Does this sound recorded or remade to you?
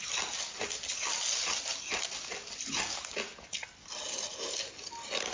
recorded